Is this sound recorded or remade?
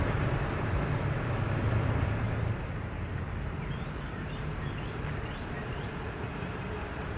remade